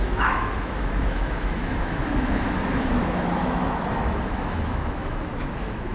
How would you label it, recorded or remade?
remade